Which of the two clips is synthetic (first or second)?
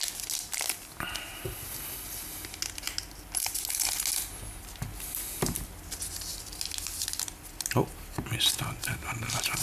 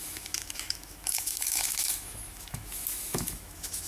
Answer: second